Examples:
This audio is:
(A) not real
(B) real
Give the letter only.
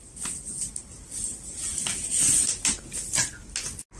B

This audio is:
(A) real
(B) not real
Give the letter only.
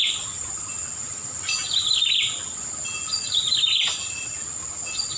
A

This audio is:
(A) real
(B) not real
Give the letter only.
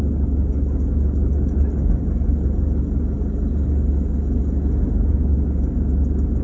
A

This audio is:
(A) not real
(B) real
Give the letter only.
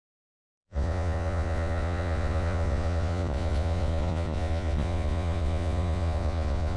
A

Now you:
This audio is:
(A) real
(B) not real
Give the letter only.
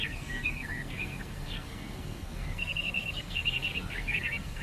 B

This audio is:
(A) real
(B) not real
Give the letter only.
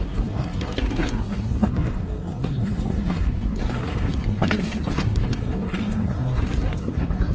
B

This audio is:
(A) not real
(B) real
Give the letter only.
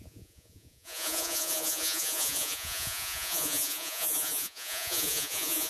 A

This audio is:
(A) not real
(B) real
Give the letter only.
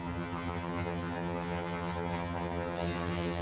A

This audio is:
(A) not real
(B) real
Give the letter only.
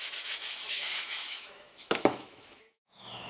A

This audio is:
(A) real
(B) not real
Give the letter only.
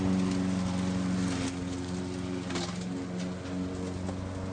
A